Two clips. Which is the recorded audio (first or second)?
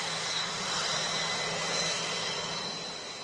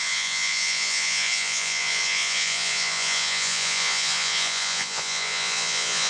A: first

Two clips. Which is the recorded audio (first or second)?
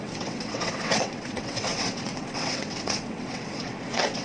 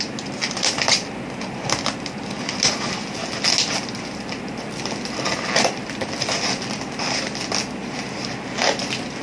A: second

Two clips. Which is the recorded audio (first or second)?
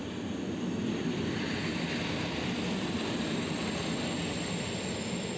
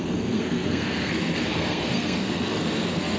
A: first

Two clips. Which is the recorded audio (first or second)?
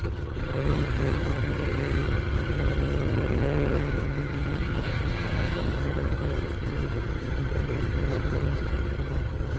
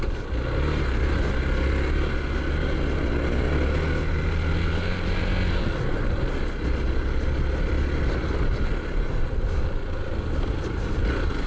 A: second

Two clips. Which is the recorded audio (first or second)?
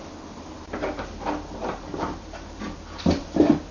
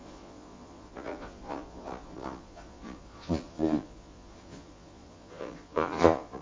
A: first